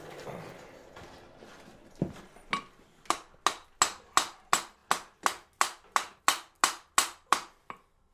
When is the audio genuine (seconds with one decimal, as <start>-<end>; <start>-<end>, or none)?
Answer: 0.0-8.1